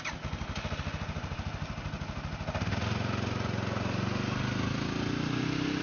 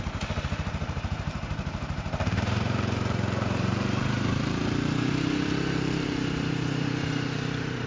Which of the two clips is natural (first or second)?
first